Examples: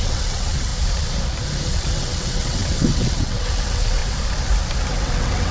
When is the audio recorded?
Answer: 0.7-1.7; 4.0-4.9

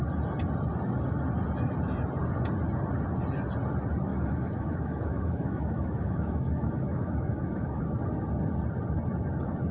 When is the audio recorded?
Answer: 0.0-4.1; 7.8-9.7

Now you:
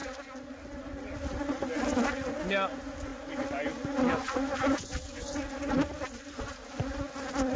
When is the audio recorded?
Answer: 0.0-7.6